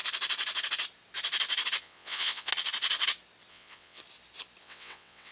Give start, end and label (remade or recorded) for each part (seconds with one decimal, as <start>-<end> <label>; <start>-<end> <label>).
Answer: 0.0-1.8 recorded; 1.8-2.5 remade; 2.5-3.5 recorded; 3.5-4.0 remade; 4.0-4.6 recorded; 4.6-5.3 remade